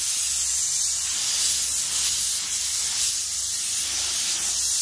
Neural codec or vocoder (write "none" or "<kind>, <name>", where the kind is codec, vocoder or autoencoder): none